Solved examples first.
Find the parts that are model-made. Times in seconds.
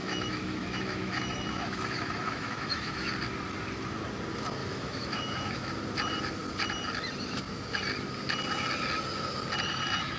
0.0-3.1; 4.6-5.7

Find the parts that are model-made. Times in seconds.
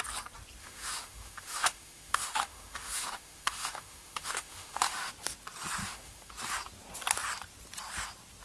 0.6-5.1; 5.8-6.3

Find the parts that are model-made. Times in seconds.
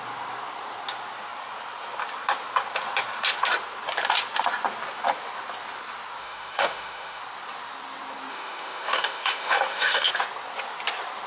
6.2-7.2; 8.3-10.1